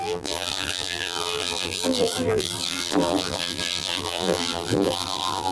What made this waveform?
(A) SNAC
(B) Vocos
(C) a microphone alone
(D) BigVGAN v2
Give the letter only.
D